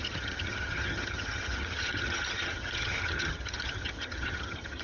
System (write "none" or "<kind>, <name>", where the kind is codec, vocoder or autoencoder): vocoder, HiFi-GAN